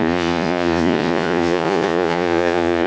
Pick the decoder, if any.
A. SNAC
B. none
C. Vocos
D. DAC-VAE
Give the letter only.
C